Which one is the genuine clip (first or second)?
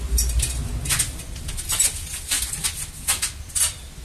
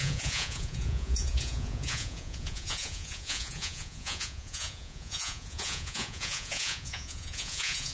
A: first